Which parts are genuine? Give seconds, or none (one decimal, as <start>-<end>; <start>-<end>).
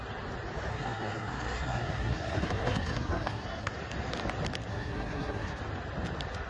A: 0.0-0.7; 3.7-4.7; 5.6-6.5